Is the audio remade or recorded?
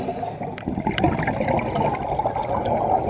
recorded